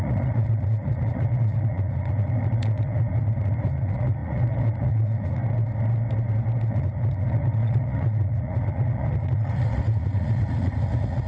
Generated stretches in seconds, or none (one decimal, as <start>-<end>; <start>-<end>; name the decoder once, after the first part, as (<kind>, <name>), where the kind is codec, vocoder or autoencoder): 0.0-5.4 (vocoder, Vocos); 6.7-11.3